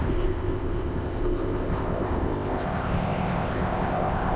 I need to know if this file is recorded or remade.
remade